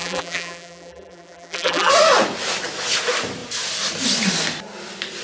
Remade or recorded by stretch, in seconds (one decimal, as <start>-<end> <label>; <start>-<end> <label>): 0.0-1.9 remade; 1.9-5.2 recorded